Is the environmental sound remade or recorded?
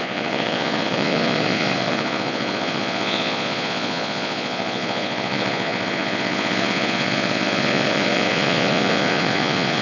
remade